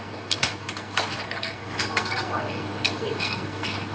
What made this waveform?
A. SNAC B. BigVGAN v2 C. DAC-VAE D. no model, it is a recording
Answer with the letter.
A